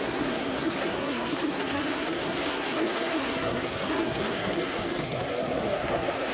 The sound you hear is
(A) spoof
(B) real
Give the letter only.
A